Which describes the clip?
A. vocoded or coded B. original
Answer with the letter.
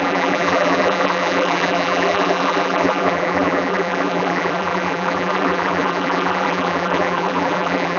A